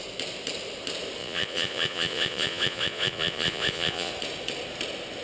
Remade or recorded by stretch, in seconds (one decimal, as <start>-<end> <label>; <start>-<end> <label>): 0.0-1.2 recorded; 1.2-4.1 remade; 4.1-5.2 recorded